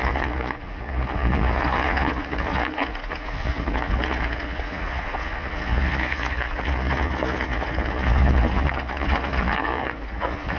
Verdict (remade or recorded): remade